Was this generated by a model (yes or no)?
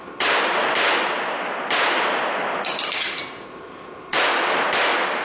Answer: no